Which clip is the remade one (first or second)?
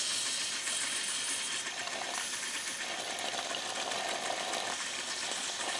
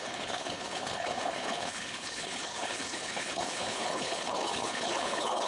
second